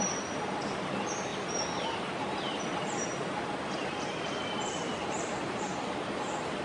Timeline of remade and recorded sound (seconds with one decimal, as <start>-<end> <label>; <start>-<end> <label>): 0.0-4.9 recorded; 4.9-5.4 remade; 5.4-6.6 recorded